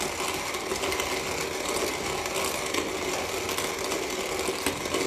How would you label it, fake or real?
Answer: real